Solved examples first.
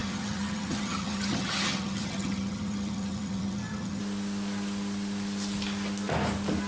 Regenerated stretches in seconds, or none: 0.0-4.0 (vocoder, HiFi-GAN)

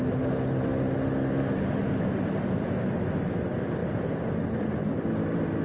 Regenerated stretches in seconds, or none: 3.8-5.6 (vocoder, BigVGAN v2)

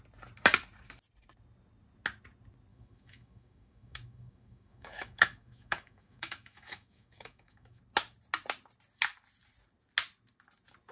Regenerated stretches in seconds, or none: 2.7-7.8 (autoencoder, DAC-VAE)